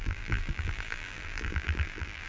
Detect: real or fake fake